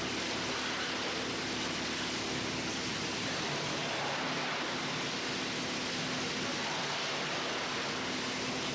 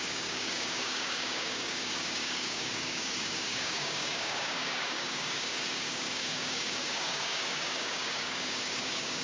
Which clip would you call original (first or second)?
first